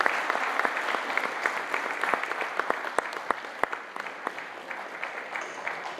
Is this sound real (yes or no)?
yes